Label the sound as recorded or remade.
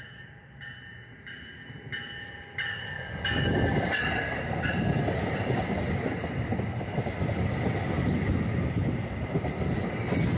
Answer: recorded